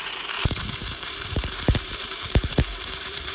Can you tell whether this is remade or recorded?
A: remade